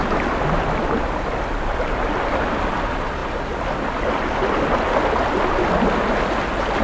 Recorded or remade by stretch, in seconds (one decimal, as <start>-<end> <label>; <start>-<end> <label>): 0.0-6.8 recorded